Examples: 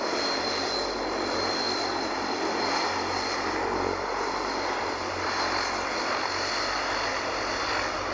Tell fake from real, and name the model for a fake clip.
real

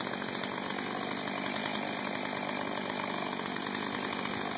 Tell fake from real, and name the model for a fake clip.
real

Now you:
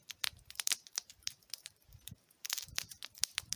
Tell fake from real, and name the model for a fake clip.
fake, vocoder, BigVGAN v2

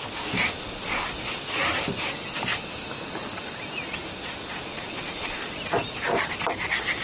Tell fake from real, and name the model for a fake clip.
real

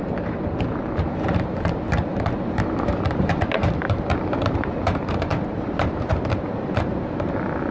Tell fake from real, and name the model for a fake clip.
fake, vocoder, BigVGAN v2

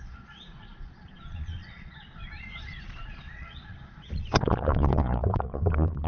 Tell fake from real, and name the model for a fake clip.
fake, vocoder, Vocos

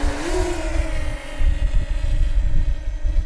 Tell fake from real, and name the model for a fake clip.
real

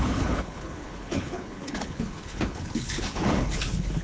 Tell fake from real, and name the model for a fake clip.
fake, codec, HILCodec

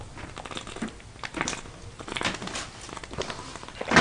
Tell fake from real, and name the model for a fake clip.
real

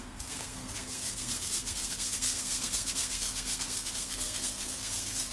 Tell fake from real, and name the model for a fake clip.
fake, codec, SNAC